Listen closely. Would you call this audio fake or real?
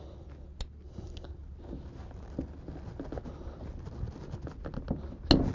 real